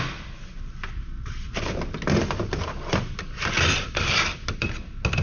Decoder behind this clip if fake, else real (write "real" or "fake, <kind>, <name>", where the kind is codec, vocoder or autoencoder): real